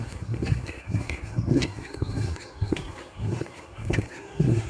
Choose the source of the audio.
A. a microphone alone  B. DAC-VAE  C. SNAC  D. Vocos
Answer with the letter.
C